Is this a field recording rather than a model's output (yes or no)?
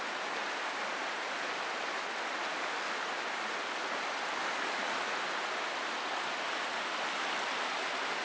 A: yes